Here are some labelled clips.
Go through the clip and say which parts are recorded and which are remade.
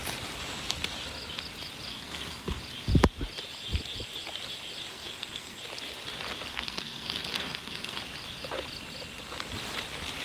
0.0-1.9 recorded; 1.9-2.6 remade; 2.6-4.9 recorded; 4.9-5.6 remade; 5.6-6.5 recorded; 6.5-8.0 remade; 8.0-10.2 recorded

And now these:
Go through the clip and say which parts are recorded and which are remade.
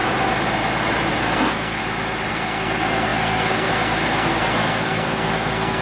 0.0-1.2 recorded; 1.2-1.8 remade; 1.8-2.3 recorded; 2.3-5.8 remade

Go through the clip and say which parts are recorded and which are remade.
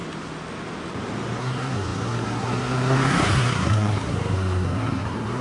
0.0-1.4 recorded; 1.4-5.4 remade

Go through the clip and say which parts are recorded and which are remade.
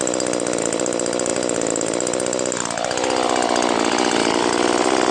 0.0-5.1 recorded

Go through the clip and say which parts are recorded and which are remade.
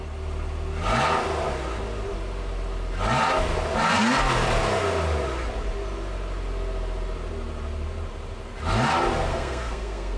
0.0-9.3 recorded; 9.3-10.2 remade